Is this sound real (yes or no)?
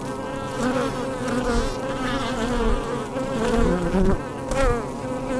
yes